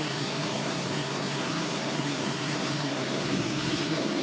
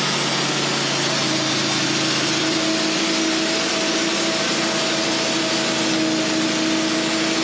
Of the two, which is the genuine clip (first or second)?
second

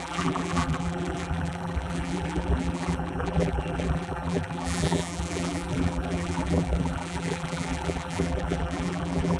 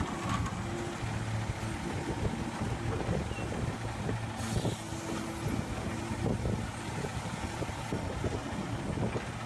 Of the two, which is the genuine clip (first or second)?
second